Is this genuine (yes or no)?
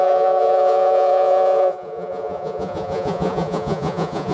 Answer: no